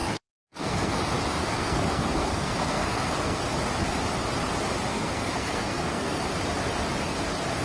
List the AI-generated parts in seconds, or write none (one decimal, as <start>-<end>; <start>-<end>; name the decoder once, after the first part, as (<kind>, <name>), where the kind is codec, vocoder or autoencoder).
0.0-1.0 (codec, SNAC); 1.4-3.4; 4.9-6.2

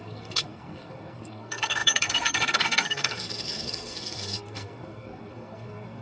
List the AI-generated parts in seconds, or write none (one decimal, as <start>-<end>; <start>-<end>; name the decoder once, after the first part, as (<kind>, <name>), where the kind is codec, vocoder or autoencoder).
0.0-6.0 (codec, SNAC)

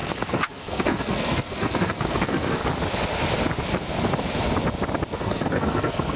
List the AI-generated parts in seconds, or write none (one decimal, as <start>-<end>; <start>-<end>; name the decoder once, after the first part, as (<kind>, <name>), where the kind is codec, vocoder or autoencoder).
0.0-2.6 (codec, SNAC); 5.1-6.2